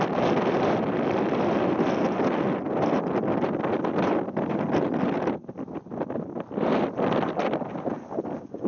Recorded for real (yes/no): yes